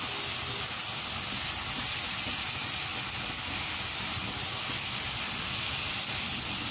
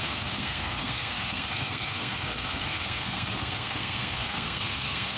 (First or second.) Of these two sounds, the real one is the first